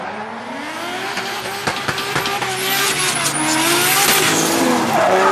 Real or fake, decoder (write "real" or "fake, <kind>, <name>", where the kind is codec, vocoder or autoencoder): real